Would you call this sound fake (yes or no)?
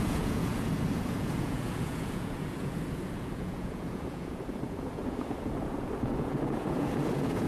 yes